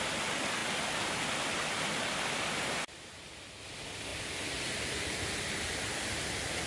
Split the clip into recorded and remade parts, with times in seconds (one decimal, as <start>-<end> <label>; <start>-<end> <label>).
0.0-6.7 recorded

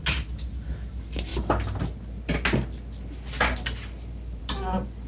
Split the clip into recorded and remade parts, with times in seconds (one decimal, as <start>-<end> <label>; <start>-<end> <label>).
0.0-5.1 recorded

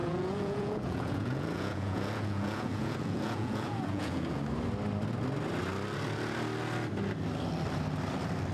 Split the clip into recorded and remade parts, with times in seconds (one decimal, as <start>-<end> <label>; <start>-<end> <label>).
0.0-4.4 remade; 4.4-8.5 recorded